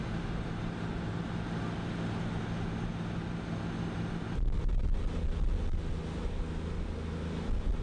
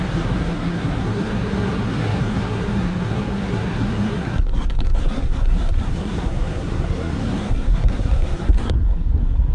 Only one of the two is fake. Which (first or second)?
second